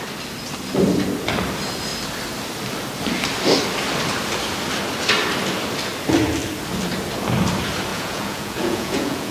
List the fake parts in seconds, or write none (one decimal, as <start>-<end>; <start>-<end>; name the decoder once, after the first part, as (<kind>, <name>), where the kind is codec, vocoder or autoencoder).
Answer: 7.9-9.3 (vocoder, Vocos)